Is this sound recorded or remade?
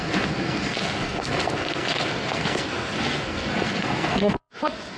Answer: remade